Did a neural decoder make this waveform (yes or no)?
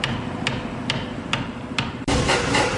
no